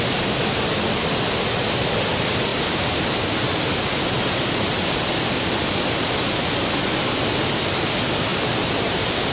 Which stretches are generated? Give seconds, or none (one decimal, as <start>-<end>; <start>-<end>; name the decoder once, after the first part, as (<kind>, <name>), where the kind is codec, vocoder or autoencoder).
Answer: none